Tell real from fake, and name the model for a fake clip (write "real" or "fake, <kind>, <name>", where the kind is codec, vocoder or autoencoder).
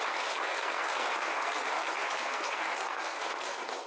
fake, codec, SNAC